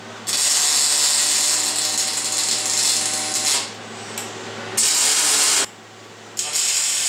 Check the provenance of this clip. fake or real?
real